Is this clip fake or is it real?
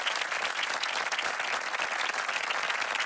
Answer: real